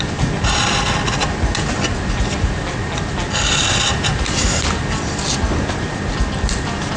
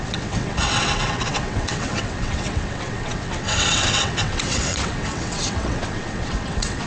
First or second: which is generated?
second